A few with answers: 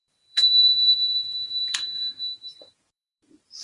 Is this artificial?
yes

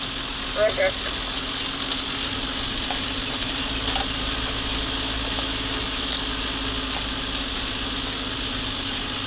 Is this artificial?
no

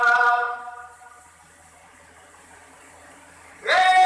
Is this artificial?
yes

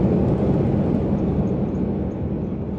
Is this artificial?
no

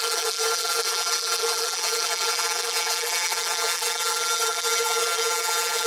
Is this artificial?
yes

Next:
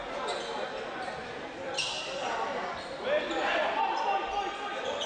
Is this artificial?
no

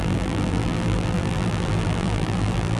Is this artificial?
yes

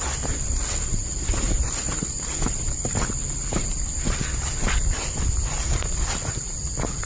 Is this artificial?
no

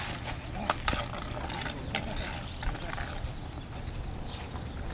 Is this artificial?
no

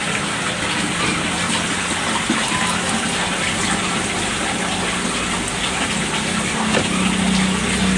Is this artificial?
no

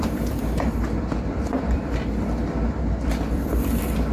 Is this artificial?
yes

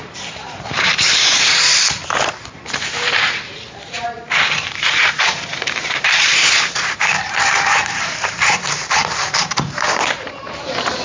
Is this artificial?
yes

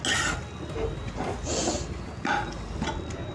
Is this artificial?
no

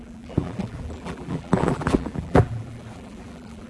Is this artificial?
yes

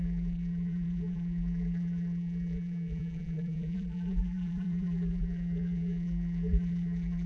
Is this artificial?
yes